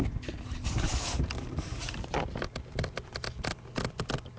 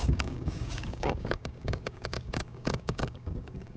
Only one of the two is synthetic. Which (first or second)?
second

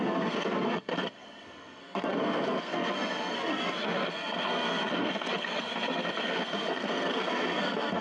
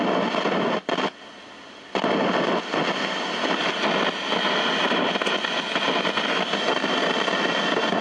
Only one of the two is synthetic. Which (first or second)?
first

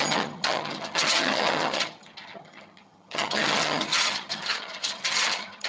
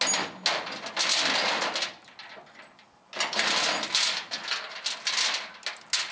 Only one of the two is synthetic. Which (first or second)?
first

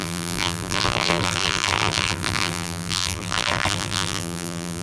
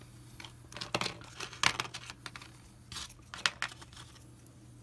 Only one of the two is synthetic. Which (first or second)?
first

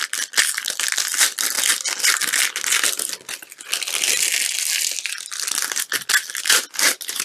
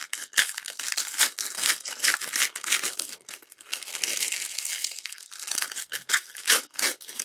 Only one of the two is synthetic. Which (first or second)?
second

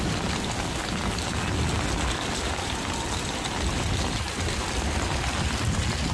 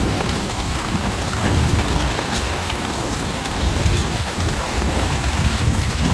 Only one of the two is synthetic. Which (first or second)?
second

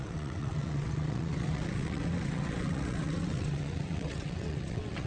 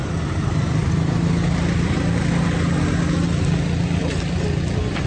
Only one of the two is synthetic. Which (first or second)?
first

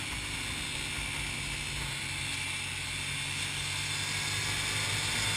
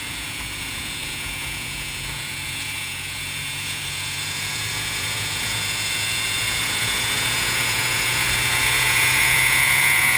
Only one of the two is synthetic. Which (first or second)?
second